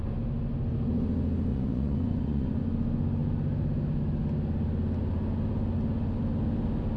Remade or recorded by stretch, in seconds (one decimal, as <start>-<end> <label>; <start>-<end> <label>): 0.0-1.5 recorded; 1.5-2.6 remade; 2.6-7.0 recorded